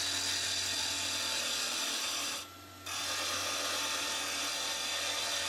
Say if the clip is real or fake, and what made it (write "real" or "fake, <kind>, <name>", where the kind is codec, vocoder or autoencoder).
real